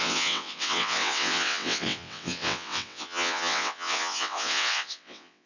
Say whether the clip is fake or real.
fake